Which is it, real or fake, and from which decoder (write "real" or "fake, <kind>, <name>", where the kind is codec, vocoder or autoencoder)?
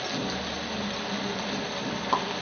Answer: real